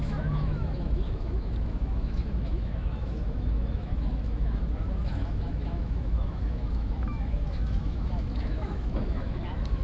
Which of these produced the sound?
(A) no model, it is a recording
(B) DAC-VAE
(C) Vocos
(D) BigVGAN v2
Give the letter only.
B